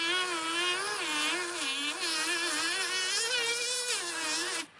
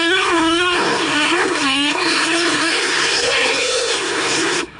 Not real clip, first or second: second